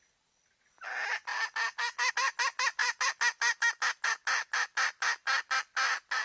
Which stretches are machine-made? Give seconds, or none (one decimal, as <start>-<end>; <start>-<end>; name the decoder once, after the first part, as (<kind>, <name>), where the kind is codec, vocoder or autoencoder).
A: none